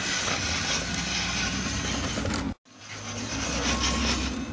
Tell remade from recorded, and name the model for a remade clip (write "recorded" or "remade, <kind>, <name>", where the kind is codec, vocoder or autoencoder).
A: recorded